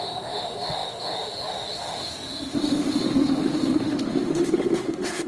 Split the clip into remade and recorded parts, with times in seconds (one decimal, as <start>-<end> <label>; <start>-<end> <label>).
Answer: 0.0-5.3 remade